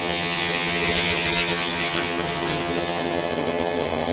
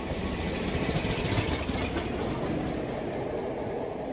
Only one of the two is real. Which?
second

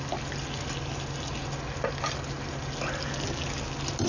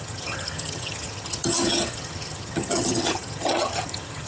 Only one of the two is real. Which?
first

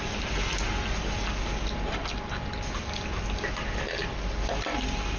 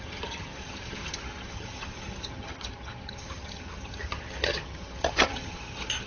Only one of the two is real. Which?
first